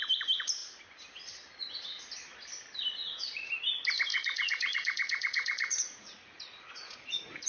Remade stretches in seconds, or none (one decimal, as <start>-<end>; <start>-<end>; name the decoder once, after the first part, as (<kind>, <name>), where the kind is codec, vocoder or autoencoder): 3.0-3.5 (vocoder, Vocos); 4.1-7.5